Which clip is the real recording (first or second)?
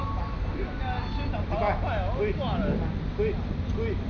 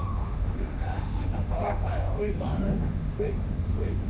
first